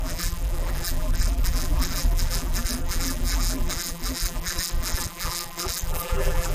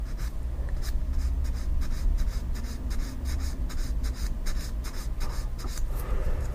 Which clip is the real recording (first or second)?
second